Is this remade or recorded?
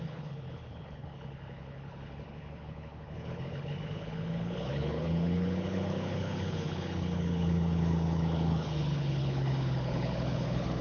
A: remade